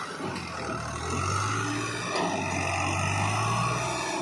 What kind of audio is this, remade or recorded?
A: recorded